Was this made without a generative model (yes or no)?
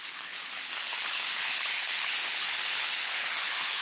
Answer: no